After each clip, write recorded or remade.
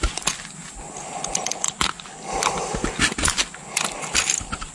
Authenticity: recorded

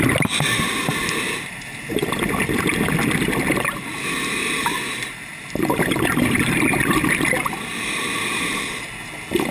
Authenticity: recorded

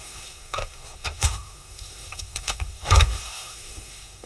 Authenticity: remade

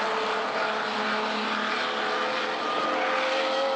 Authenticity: recorded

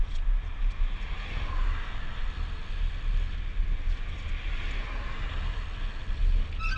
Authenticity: recorded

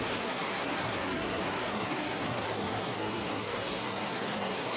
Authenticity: remade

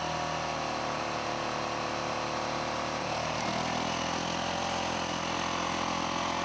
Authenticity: recorded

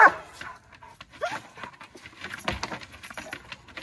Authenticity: recorded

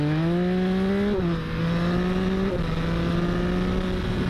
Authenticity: recorded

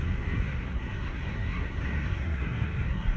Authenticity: remade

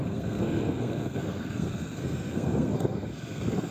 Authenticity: remade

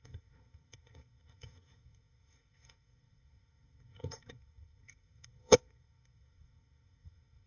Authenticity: remade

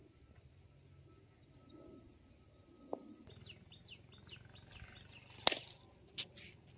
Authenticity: recorded